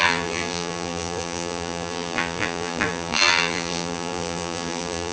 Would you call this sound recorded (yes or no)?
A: no